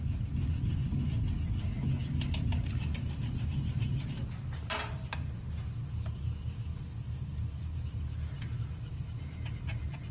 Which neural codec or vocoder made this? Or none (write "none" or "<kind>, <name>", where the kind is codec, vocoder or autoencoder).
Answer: none